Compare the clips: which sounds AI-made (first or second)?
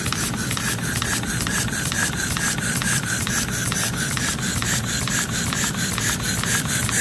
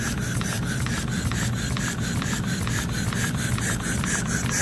first